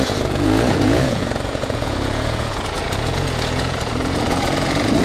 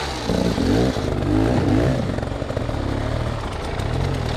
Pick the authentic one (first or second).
second